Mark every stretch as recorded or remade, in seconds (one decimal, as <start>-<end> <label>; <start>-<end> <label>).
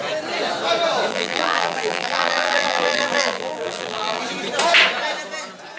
0.0-1.1 recorded; 1.1-4.2 remade; 4.2-5.8 recorded